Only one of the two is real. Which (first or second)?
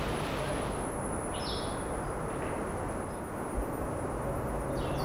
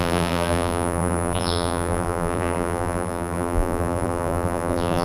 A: first